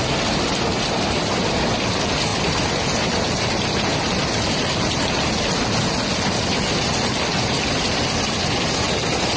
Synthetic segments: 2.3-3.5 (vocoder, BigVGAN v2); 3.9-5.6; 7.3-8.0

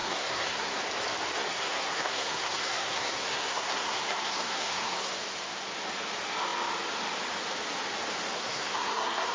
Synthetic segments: 0.0-0.8 (codec, SNAC); 1.4-5.1; 8.4-9.3

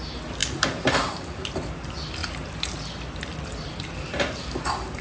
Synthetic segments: none

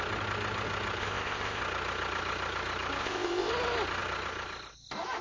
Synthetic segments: 1.0-1.6 (codec, ZipCodec); 3.0-3.5

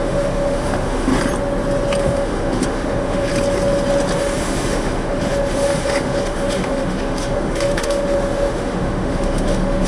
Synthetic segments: 0.0-1.1 (autoencoder, DAC-VAE); 2.0-3.3; 4.2-9.9